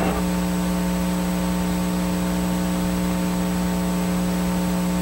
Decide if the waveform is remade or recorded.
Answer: recorded